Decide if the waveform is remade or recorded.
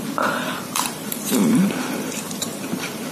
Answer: remade